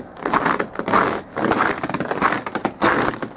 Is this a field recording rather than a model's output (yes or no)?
yes